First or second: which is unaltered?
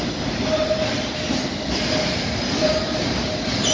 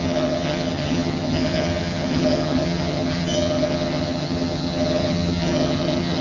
first